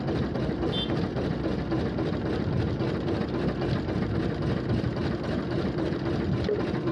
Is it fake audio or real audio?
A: real